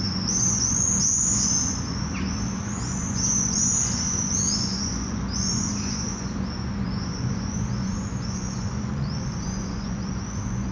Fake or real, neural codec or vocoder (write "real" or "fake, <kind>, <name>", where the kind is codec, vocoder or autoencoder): fake, vocoder, Vocos